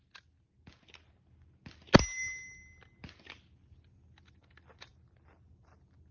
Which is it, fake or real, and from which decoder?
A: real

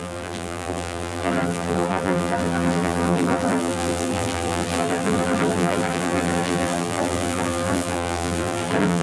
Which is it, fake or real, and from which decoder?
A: fake, vocoder, BigVGAN v2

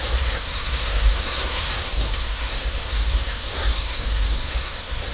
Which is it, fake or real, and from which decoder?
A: fake, codec, SNAC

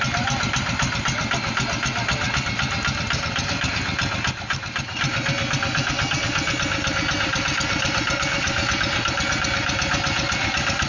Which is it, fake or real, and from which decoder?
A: real